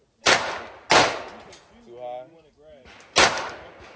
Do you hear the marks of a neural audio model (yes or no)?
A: no